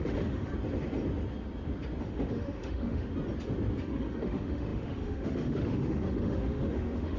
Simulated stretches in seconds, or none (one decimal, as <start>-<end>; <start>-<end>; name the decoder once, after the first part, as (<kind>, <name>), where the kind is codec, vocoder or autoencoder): 0.0-0.5 (autoencoder, DAC-VAE); 2.0-3.1; 3.8-7.2